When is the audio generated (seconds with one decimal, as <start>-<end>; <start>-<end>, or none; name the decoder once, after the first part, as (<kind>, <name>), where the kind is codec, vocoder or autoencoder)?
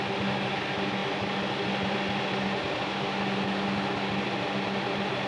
none